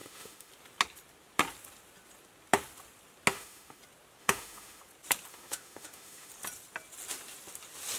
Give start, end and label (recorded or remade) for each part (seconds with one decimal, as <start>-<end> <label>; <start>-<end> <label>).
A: 0.0-0.5 remade; 0.5-3.3 recorded; 3.3-3.8 remade; 3.8-4.2 recorded; 4.2-4.8 remade; 4.8-5.3 recorded; 5.3-6.3 remade; 6.3-8.0 recorded